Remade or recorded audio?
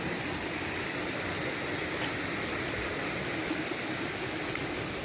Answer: recorded